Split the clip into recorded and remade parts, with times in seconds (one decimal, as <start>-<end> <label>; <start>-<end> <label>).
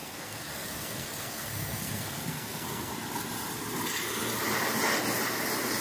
0.0-2.9 remade; 2.9-5.8 recorded